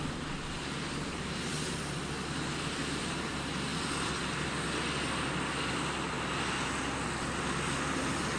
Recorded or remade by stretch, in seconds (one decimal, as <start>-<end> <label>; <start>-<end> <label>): 0.0-8.4 recorded